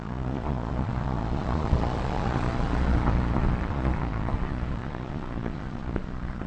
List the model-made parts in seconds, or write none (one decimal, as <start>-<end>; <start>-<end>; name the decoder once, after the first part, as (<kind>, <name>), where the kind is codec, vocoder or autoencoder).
0.0-6.5 (vocoder, Vocos)